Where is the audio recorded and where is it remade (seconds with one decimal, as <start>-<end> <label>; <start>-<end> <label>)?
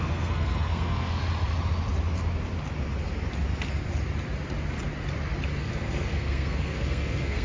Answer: 0.0-1.2 remade; 1.2-5.6 recorded; 5.6-7.4 remade